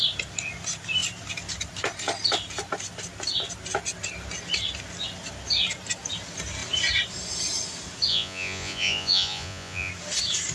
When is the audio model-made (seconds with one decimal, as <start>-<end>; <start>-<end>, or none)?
8.1-9.9